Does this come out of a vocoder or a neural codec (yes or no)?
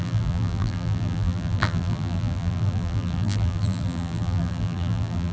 yes